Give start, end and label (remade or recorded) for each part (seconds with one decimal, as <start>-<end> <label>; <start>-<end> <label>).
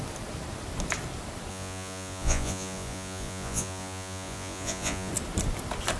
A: 0.0-1.5 recorded; 1.5-5.1 remade; 5.1-6.0 recorded